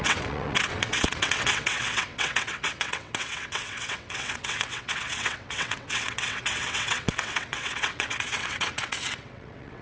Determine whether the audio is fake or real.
fake